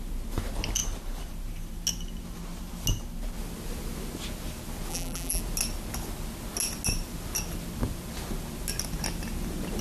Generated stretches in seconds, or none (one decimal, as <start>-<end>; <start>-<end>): 4.9-5.4